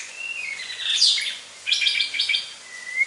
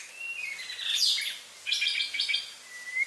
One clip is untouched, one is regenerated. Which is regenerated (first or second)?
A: first